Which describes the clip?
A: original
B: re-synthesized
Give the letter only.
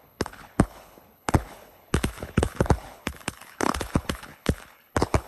B